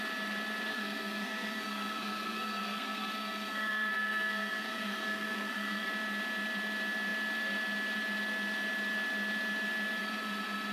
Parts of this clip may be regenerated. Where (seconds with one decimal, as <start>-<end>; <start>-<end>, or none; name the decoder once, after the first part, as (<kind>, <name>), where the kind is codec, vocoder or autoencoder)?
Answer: 0.7-5.9 (codec, SNAC)